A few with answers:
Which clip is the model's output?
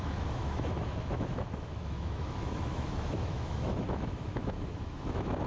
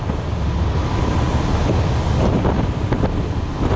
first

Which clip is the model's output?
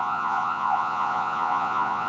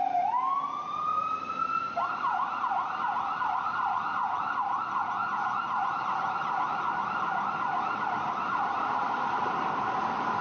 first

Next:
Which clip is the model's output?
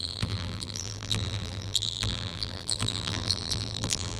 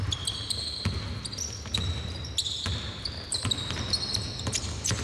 first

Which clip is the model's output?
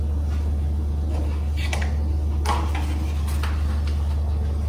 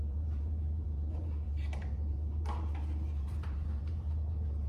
second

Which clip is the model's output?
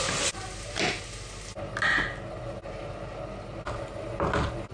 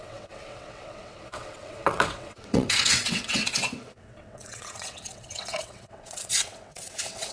second